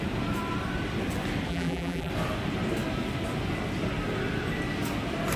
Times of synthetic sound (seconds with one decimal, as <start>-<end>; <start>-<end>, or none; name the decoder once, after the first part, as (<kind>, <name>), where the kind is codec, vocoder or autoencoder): 1.5-2.1 (vocoder, BigVGAN v2)